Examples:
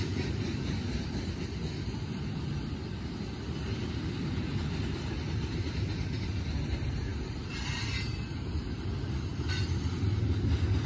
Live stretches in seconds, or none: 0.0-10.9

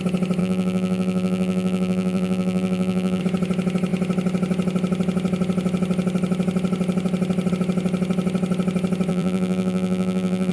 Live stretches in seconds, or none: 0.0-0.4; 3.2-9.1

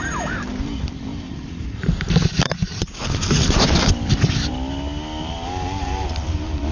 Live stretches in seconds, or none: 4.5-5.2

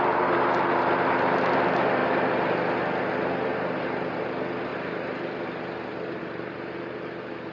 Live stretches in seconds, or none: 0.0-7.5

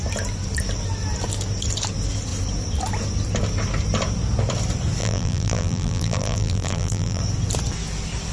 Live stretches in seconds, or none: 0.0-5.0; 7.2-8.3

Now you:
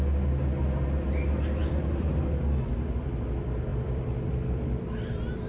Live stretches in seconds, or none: 0.0-3.7

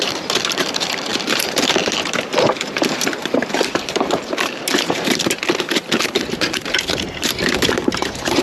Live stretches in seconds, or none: none